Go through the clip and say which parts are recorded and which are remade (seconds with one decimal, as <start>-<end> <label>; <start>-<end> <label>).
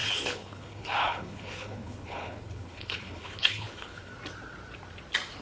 0.0-4.1 remade; 4.1-5.4 recorded